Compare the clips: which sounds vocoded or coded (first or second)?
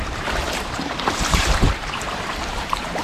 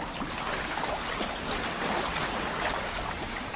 first